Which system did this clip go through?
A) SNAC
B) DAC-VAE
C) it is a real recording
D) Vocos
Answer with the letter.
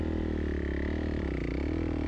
C